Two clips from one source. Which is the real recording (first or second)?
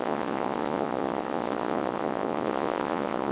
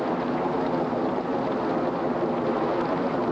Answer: second